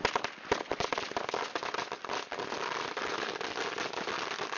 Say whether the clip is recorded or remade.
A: recorded